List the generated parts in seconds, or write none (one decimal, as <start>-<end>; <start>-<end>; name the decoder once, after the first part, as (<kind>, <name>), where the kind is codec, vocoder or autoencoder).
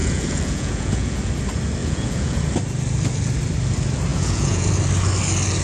0.0-1.3 (vocoder, Vocos); 1.8-2.4; 4.1-4.7